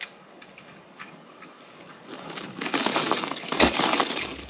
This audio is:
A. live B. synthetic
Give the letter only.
B